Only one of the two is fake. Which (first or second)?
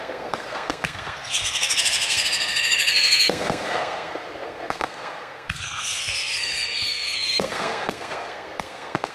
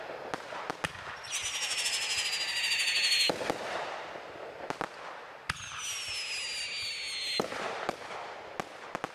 first